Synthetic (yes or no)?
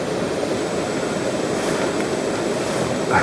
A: no